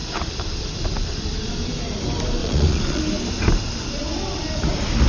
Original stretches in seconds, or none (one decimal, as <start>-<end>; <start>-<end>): 0.0-2.4; 3.0-5.1